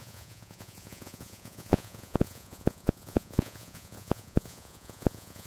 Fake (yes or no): yes